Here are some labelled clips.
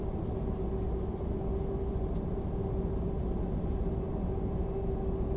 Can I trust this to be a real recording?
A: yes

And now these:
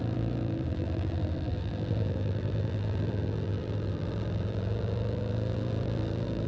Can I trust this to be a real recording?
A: no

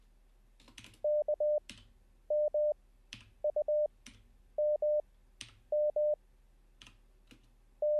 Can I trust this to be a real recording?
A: yes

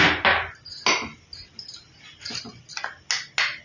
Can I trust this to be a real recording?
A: yes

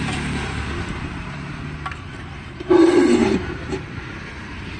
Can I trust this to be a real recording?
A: no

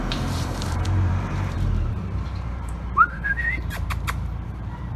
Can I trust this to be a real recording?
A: no